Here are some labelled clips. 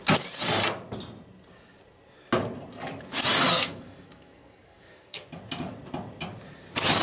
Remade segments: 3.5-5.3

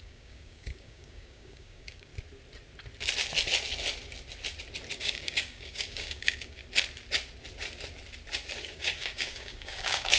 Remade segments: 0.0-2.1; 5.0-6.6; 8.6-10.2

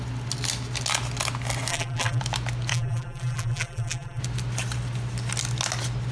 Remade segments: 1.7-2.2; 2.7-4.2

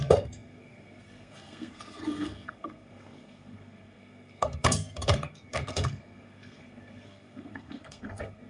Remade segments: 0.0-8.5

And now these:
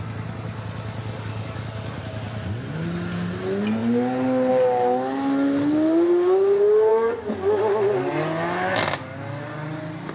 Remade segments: 1.0-2.0; 6.9-7.6